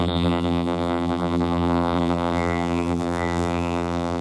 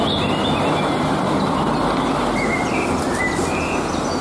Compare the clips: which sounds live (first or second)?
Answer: second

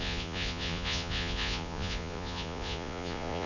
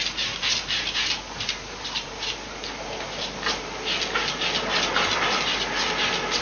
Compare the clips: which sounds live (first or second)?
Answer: second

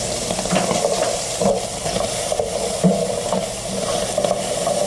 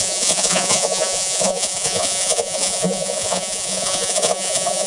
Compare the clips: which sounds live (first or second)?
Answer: first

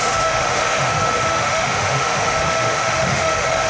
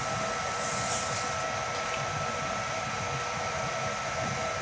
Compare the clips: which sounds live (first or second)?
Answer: second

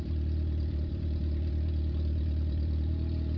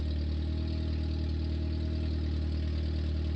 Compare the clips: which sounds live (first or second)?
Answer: second